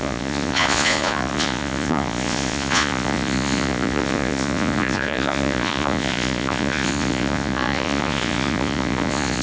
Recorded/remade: remade